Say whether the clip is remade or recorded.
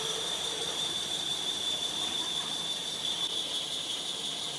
remade